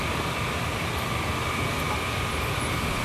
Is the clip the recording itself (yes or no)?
yes